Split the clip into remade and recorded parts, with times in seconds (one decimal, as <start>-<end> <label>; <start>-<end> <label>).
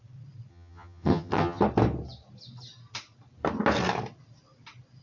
0.0-0.5 recorded; 0.5-1.6 remade; 1.6-5.0 recorded